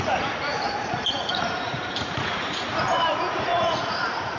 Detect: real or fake fake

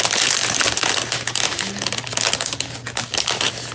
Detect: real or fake real